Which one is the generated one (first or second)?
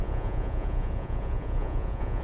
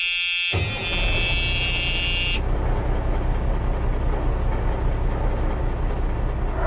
first